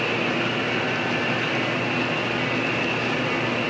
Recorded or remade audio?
recorded